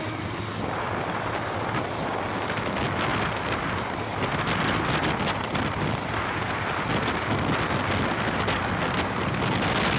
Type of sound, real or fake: real